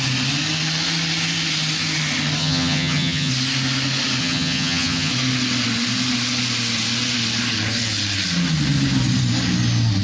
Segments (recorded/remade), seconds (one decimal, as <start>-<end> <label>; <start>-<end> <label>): 0.0-2.4 recorded; 2.4-3.3 remade; 3.3-4.2 recorded; 4.2-5.1 remade; 5.1-10.0 recorded

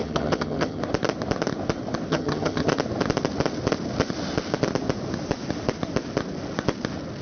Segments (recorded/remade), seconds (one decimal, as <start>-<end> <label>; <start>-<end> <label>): 0.0-0.8 remade; 0.8-2.1 recorded; 2.1-2.7 remade; 2.7-7.2 recorded